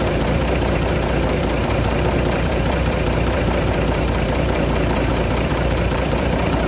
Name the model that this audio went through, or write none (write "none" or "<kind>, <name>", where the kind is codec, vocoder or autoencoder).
vocoder, BigVGAN v2